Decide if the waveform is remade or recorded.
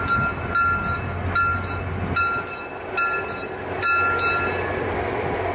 recorded